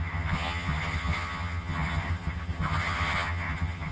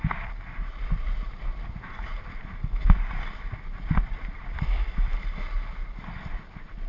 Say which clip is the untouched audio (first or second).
second